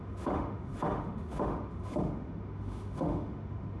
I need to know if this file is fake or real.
fake